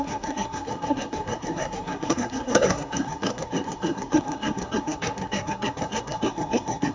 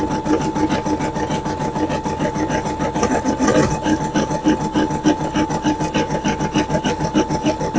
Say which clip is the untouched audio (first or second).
second